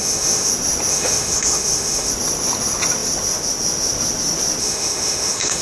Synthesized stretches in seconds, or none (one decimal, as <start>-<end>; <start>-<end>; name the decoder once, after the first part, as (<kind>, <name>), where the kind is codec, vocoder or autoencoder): 0.0-0.5 (autoencoder, DAC-VAE); 0.9-2.1; 4.6-5.6